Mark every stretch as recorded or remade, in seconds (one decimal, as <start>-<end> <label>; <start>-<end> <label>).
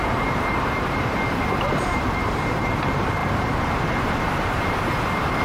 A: 0.0-5.4 remade